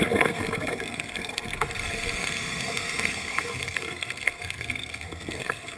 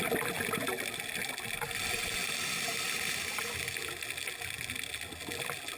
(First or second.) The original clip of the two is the second